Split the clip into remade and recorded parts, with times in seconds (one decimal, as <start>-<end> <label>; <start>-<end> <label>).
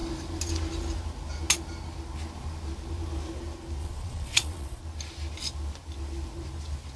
0.0-3.8 recorded; 3.8-4.8 remade; 4.8-7.0 recorded